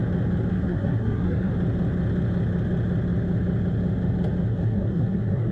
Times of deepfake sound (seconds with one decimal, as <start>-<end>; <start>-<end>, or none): 0.5-1.5; 4.5-5.5